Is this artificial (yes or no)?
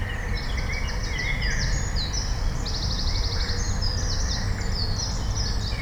no